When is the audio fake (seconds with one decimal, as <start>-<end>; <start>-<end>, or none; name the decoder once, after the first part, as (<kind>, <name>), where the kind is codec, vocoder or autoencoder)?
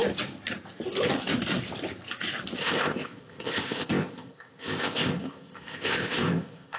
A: 2.6-6.8 (codec, ZipCodec)